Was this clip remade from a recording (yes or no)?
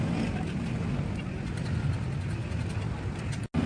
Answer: no